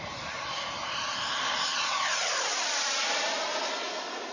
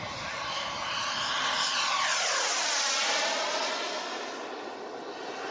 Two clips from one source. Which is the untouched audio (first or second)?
second